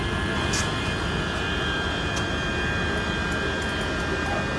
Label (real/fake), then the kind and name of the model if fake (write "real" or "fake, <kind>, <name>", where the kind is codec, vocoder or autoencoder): real